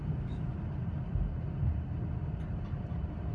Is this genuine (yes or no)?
yes